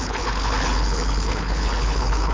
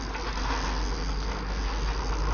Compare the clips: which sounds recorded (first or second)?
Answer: second